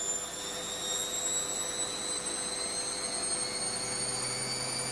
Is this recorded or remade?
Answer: recorded